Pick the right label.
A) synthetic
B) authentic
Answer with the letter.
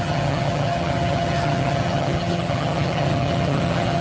A